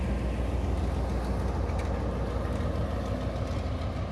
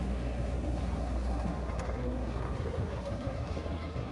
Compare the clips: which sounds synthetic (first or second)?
second